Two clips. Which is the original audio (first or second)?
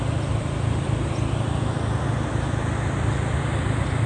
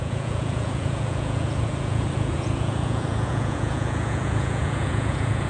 first